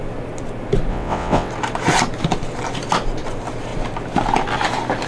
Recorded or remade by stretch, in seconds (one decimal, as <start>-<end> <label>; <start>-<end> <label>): 0.0-0.9 recorded; 0.9-1.5 remade; 1.5-5.1 recorded